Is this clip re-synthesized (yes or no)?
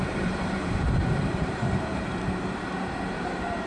yes